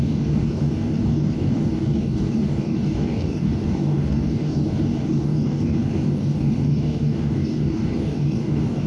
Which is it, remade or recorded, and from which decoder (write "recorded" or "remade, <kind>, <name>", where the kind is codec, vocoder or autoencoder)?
remade, codec, DAC